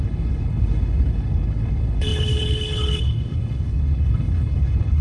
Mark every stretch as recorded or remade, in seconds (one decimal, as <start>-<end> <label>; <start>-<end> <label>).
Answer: 0.0-5.0 remade